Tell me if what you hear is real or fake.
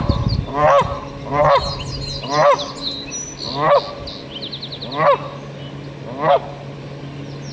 real